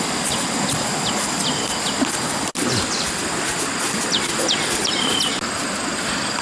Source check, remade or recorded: recorded